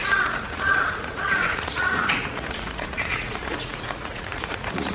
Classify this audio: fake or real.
fake